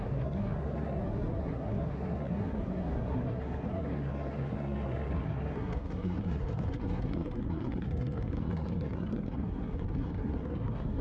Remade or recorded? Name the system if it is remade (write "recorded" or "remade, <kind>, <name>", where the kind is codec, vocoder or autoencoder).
remade, codec, SNAC